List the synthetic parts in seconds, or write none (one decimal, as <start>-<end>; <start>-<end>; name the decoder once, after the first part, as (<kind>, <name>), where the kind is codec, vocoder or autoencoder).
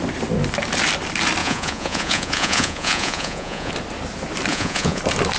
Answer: 1.4-3.7 (vocoder, Vocos); 4.5-5.0